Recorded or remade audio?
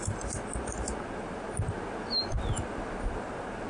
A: recorded